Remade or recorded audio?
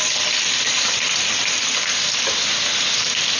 recorded